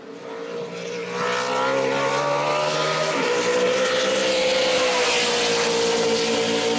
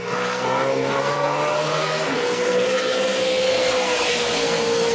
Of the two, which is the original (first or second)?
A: first